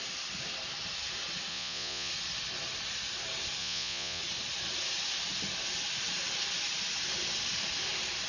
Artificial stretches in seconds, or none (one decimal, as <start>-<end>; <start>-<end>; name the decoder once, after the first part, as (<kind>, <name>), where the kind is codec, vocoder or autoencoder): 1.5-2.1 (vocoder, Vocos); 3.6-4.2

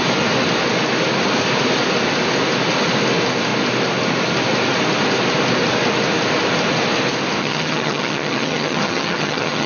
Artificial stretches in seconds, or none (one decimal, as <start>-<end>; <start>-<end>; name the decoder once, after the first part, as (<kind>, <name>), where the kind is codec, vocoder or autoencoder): 7.4-9.7 (vocoder, HiFi-GAN)

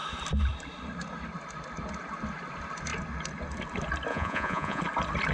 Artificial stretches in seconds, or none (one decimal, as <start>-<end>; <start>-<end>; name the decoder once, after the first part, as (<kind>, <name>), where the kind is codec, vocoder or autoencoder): 4.1-4.8 (vocoder, Vocos)

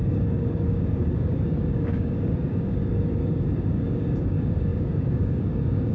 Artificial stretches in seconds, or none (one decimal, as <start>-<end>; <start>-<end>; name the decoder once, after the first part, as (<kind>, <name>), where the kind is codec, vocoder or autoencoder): 0.0-5.9 (codec, DAC)